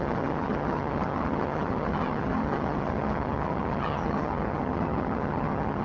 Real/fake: fake